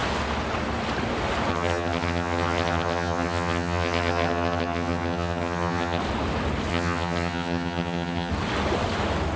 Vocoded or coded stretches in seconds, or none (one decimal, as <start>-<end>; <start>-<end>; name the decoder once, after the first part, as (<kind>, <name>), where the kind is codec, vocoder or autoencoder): 1.5-6.0 (vocoder, HiFi-GAN); 6.7-8.3